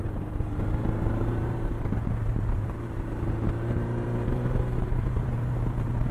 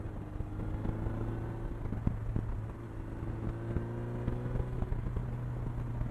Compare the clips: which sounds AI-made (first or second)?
first